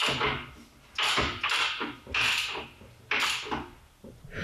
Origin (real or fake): real